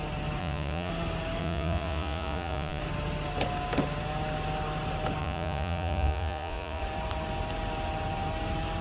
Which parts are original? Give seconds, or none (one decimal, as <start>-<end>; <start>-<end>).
0.0-0.4; 0.9-1.4; 2.8-5.2; 6.8-8.8